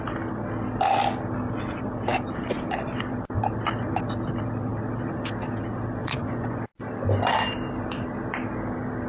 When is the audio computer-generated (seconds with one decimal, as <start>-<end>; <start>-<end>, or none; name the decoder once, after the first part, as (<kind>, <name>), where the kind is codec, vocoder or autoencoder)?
6.0-6.6 (vocoder, Vocos)